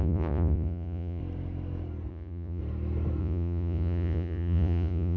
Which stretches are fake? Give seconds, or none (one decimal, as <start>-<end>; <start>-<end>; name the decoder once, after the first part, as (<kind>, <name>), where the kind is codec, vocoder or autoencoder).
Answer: 0.0-1.2 (vocoder, Vocos); 2.1-2.6; 3.2-5.2